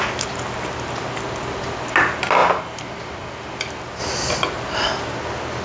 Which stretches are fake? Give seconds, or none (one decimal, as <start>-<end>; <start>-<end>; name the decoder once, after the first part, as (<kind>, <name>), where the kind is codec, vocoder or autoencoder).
none